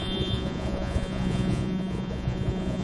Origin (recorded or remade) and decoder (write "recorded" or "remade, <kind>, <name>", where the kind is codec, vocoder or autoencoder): remade, vocoder, Vocos